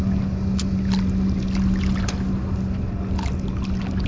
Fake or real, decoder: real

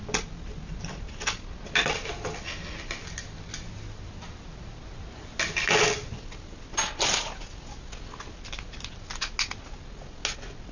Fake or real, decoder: real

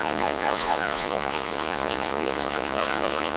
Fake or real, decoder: fake, vocoder, Vocos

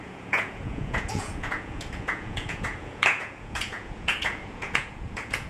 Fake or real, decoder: fake, vocoder, Vocos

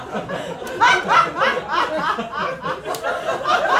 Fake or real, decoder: real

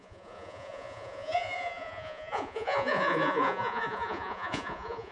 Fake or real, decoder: fake, vocoder, Vocos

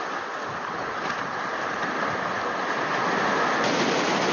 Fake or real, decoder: real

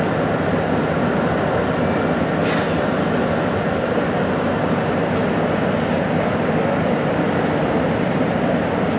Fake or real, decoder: real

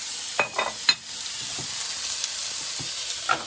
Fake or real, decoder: real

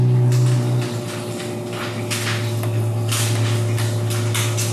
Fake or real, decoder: real